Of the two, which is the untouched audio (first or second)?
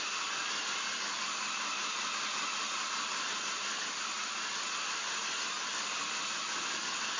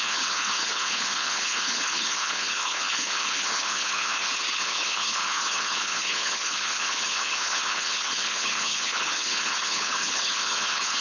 first